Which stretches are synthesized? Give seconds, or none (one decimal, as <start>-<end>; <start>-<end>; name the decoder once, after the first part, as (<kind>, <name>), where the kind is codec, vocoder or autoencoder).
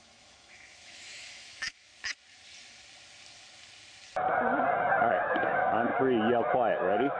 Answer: 0.0-1.9 (autoencoder, DAC-VAE); 5.1-5.9; 6.5-7.2